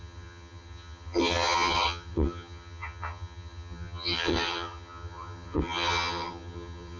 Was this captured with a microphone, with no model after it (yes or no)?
no